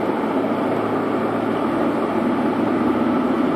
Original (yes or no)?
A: yes